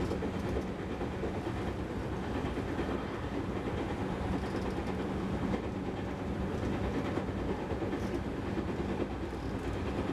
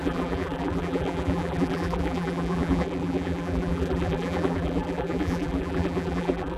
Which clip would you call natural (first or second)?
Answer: first